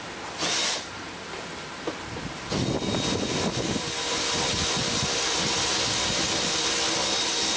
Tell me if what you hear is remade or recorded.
recorded